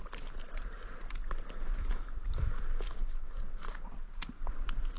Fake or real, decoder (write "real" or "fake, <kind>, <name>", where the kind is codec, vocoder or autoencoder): fake, vocoder, BigVGAN v2